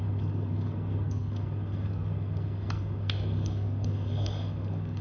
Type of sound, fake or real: fake